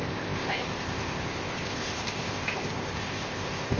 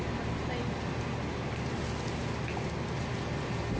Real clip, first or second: second